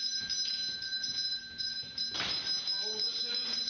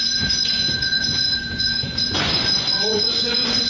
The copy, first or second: second